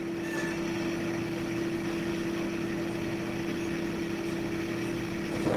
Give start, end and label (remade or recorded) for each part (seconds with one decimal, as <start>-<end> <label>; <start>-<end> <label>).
0.0-5.6 recorded